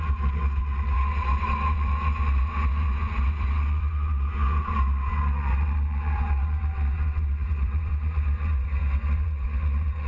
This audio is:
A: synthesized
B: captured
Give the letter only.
A